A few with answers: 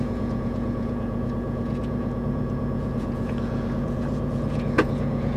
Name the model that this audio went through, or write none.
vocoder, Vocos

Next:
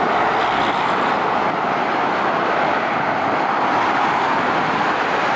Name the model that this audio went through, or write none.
none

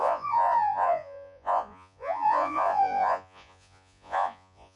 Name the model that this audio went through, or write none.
vocoder, Vocos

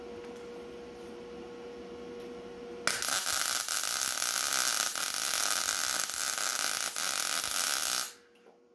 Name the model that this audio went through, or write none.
none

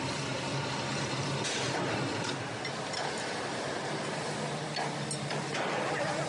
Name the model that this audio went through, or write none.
vocoder, BigVGAN v2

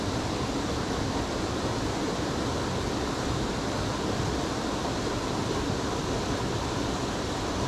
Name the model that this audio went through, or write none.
none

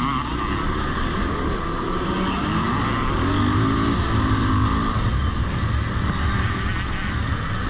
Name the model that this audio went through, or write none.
none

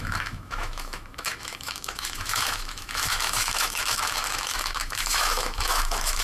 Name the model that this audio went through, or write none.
autoencoder, DAC-VAE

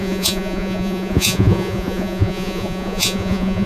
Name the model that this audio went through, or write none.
vocoder, Vocos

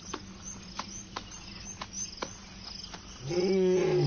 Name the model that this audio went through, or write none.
none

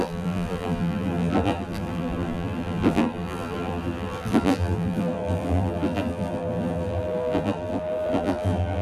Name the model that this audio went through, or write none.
vocoder, BigVGAN v2